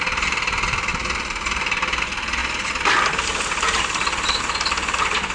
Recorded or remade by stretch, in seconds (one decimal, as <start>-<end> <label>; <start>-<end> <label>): 0.0-5.3 recorded